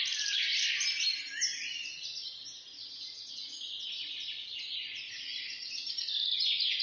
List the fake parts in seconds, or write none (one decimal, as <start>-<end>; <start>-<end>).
none

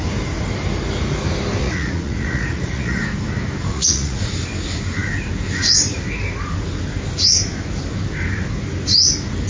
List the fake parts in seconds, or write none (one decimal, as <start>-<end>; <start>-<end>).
1.6-3.0; 3.7-4.3

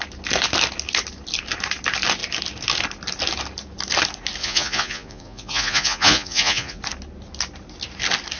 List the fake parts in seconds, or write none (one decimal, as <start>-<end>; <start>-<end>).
4.4-6.8

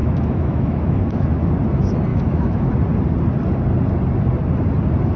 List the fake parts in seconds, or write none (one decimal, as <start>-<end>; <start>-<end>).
0.0-1.5; 2.1-2.7

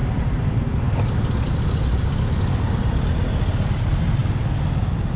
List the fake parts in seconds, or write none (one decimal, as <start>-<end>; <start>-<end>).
0.0-0.7

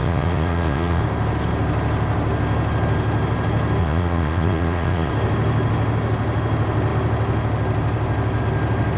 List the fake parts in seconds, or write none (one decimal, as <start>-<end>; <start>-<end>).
0.0-1.0; 3.8-5.1

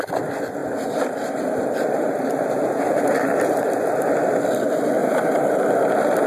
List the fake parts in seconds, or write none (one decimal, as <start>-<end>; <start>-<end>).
0.6-3.8; 5.0-5.5